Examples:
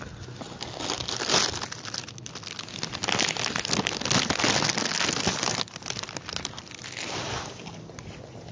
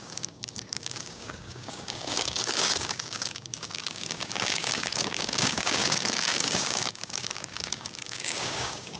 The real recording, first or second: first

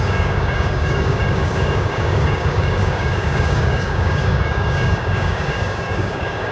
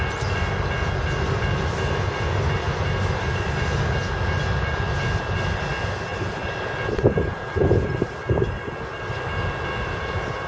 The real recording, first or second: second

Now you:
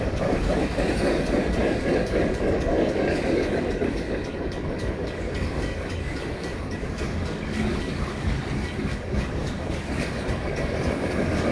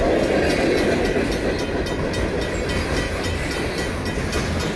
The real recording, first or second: second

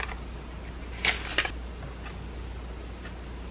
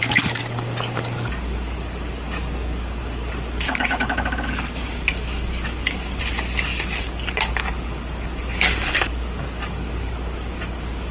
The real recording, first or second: first